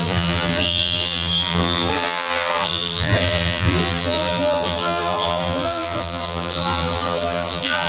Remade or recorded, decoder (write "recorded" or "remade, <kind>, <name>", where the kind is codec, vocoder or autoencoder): remade, vocoder, BigVGAN v2